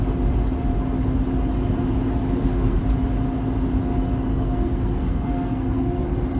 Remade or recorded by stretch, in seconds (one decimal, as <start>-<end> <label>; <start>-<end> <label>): 0.0-2.2 recorded; 2.2-2.8 remade; 2.8-4.3 recorded; 4.3-6.0 remade; 6.0-6.4 recorded